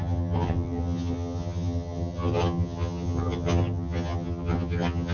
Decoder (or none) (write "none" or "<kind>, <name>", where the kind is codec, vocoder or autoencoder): vocoder, HiFi-GAN